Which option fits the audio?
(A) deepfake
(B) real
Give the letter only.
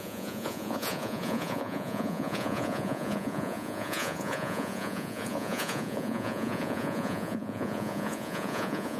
A